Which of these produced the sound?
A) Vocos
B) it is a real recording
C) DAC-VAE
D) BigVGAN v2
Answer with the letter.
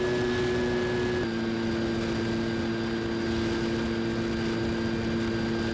B